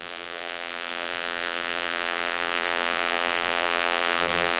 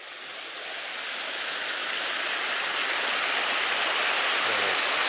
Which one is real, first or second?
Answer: second